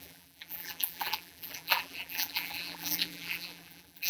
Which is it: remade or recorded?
remade